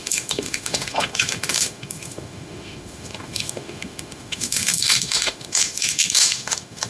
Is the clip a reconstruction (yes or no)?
yes